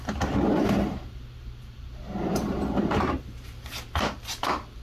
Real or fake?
fake